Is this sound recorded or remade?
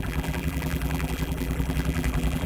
remade